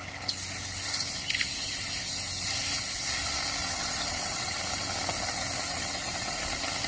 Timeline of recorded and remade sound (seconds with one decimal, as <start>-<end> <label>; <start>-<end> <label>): 0.0-3.6 recorded; 3.6-4.6 remade; 4.6-5.7 recorded; 5.7-6.4 remade; 6.4-6.9 recorded